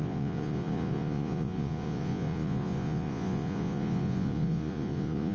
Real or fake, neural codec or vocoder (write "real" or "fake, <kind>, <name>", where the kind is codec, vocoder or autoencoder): fake, vocoder, Vocos